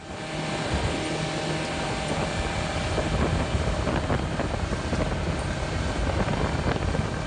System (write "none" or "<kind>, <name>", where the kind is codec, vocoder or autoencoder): none